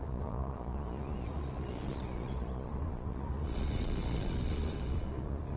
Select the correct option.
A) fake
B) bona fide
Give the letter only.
A